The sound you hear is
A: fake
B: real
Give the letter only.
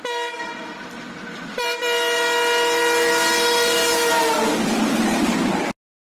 B